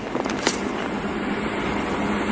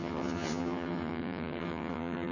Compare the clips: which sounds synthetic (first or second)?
second